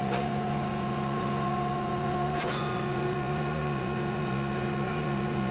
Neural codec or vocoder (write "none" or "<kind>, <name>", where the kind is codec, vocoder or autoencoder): vocoder, Vocos